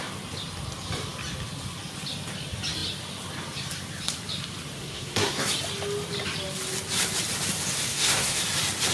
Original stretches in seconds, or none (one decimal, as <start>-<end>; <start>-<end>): 0.0-4.8; 5.5-7.9; 8.4-8.9

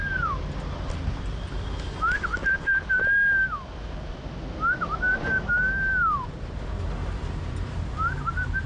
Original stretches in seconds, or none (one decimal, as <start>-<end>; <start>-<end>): 0.0-2.4; 3.0-8.7

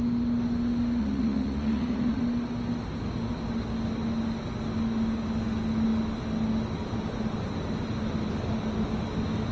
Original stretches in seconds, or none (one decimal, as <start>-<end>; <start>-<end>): 0.0-1.0; 2.2-9.5

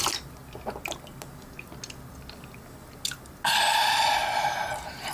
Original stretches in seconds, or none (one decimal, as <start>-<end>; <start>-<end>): 0.0-4.2

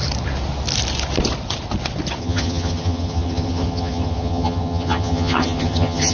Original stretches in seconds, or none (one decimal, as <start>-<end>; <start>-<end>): 0.0-2.2

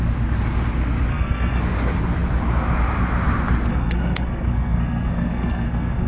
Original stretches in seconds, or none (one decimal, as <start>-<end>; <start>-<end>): 0.0-1.1; 1.6-3.7

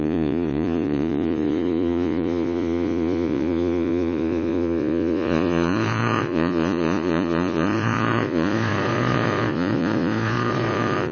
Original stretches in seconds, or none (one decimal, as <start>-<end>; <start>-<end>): none

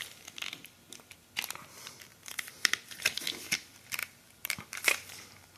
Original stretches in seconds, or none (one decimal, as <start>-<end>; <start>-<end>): 0.0-2.1; 2.7-4.0